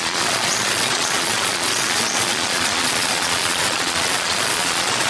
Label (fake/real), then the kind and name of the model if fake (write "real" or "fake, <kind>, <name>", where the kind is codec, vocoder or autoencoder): fake, vocoder, Vocos